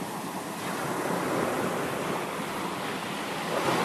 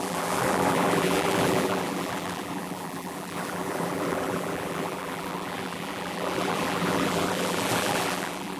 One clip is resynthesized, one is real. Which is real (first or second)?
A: first